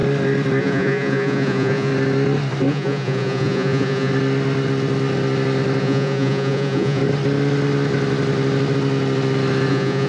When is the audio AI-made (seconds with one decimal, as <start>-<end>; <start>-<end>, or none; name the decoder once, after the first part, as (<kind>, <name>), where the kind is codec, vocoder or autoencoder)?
0.6-1.9 (vocoder, Vocos); 2.7-4.1; 5.8-7.0; 9.7-10.1